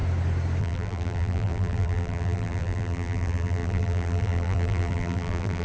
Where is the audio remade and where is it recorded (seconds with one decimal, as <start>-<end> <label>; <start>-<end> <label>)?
0.0-0.6 recorded; 0.6-5.6 remade